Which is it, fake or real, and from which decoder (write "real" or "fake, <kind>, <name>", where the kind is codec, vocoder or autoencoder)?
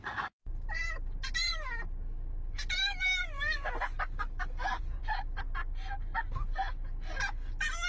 real